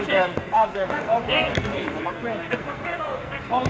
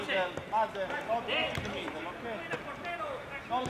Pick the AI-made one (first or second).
first